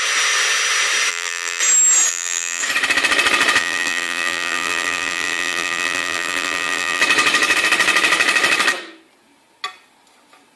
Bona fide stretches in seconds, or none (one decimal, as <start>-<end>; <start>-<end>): 0.0-1.1; 1.6-2.1; 2.6-3.6; 7.0-10.6